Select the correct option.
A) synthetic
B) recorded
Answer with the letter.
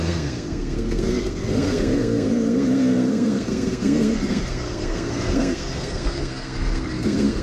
A